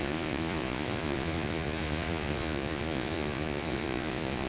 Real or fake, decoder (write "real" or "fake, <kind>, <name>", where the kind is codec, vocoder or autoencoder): fake, vocoder, Vocos